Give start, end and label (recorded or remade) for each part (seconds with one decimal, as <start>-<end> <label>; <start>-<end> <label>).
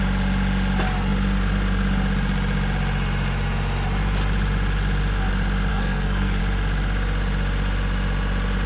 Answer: 0.0-5.7 recorded; 5.7-6.4 remade; 6.4-8.7 recorded